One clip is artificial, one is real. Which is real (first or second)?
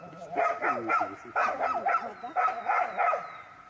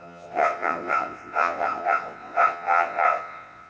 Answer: first